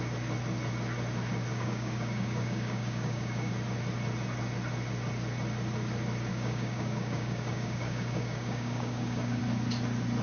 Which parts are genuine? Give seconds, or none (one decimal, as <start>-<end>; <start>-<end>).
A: 0.0-1.5; 3.5-6.3; 9.4-10.2